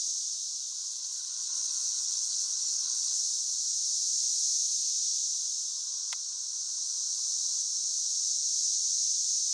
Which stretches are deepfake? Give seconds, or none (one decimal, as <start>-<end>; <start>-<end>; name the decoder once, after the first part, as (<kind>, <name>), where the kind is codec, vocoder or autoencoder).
0.9-3.2 (codec, HILCodec)